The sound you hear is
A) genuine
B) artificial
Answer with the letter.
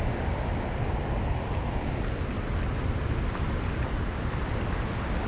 A